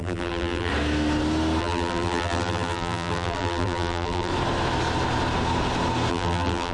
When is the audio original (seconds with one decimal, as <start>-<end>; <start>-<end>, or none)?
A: 0.7-1.6; 4.3-6.1